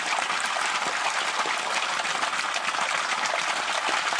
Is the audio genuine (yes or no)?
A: yes